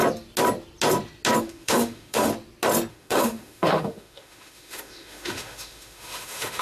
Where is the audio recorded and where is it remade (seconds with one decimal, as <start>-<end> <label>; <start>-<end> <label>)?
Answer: 0.0-1.4 recorded; 1.4-2.3 remade; 2.3-2.9 recorded; 2.9-6.6 remade